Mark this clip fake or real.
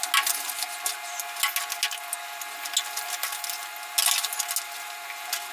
real